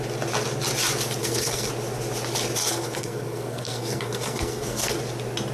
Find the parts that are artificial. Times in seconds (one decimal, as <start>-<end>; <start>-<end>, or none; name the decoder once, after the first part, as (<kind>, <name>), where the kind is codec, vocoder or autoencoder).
1.2-1.7 (codec, SNAC); 2.6-5.0